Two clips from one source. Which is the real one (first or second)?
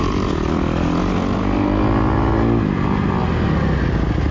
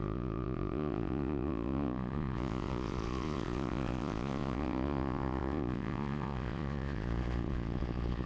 first